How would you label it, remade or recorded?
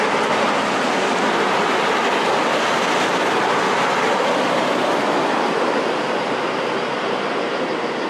recorded